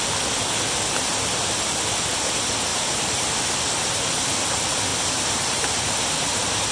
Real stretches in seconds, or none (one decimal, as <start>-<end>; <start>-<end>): 0.0-2.7; 3.4-4.9